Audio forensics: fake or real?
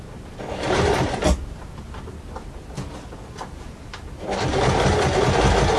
real